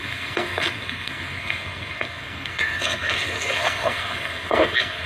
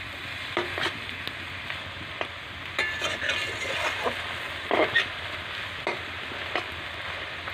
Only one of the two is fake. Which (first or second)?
first